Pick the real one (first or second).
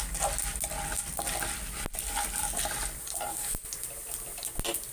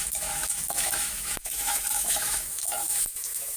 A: first